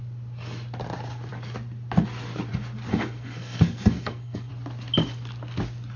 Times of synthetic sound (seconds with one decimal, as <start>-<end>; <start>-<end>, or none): 2.9-4.5